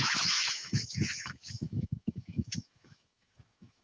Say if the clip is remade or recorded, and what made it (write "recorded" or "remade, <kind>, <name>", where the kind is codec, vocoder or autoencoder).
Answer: remade, autoencoder, DAC-VAE